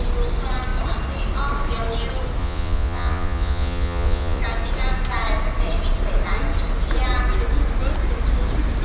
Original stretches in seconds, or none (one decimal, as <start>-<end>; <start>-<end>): 0.0-2.4; 4.4-8.8